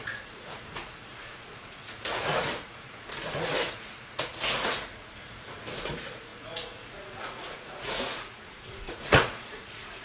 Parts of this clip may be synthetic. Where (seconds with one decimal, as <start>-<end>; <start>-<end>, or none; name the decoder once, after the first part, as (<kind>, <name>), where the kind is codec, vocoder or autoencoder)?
0.0-10.0 (vocoder, Vocos)